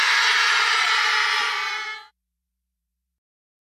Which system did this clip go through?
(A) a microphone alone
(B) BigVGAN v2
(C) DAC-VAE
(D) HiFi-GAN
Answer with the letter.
B